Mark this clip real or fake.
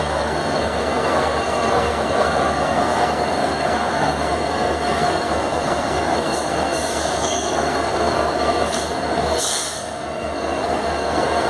fake